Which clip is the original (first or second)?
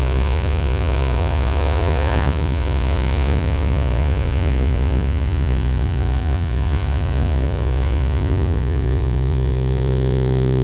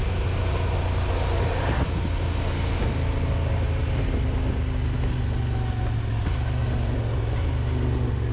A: second